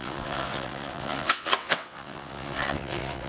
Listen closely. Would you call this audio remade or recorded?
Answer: remade